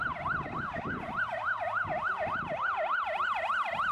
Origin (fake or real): real